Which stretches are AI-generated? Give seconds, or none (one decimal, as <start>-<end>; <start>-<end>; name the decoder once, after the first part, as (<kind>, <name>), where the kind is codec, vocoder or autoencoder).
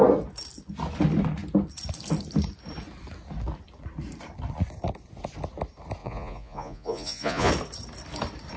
6.0-7.5 (vocoder, Vocos)